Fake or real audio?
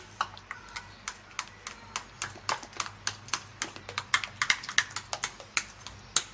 real